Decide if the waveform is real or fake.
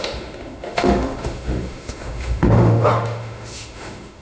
fake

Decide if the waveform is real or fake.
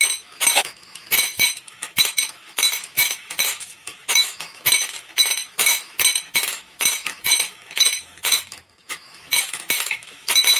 fake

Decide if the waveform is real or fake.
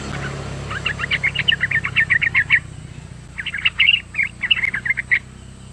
real